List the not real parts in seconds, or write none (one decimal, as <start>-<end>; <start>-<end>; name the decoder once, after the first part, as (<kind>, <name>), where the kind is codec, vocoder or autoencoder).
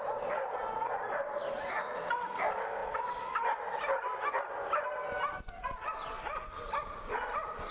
none